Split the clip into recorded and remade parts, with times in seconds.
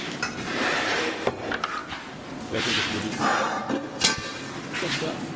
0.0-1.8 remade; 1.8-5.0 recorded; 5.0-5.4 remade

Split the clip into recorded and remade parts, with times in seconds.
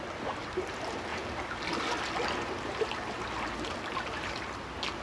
0.0-5.0 recorded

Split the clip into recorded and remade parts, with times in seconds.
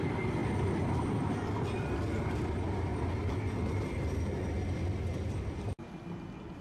0.0-6.6 recorded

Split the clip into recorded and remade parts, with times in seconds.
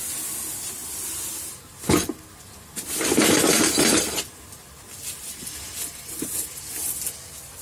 0.0-7.6 recorded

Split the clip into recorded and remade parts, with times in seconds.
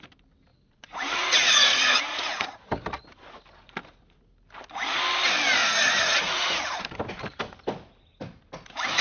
0.0-0.5 recorded; 0.5-2.7 remade; 2.7-5.6 recorded; 5.6-6.8 remade; 6.8-9.0 recorded